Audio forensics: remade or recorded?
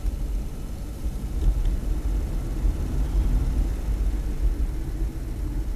recorded